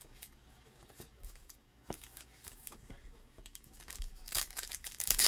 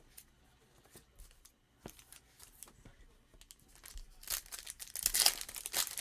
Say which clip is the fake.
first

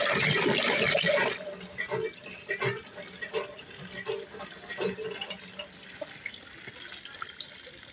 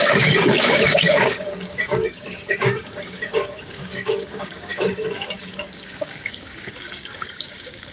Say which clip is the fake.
second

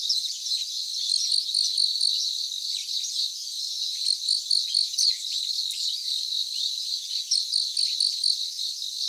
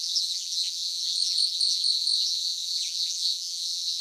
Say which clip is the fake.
second